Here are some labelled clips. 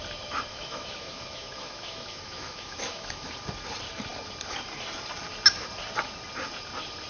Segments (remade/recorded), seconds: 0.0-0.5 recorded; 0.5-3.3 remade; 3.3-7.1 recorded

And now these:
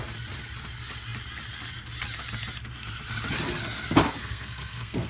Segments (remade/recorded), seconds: 0.0-4.2 recorded; 4.2-5.1 remade

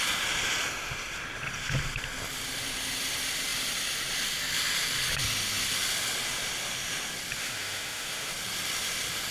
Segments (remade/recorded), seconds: 0.0-7.4 recorded; 7.4-8.3 remade; 8.3-9.3 recorded

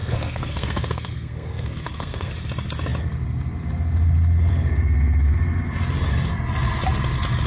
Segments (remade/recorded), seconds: 0.0-2.3 remade; 2.3-7.5 recorded

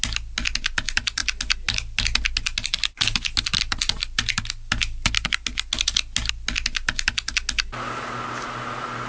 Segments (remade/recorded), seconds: 0.0-9.1 recorded

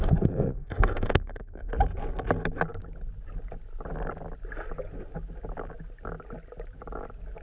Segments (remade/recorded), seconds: 0.0-1.7 remade; 1.7-7.4 recorded

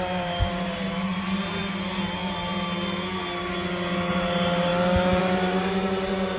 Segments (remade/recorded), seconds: 0.0-1.6 remade; 1.6-4.1 recorded; 4.1-4.7 remade; 4.7-5.2 recorded; 5.2-6.4 remade

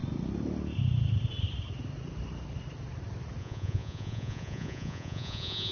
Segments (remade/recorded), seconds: 0.0-3.4 recorded; 3.4-5.7 remade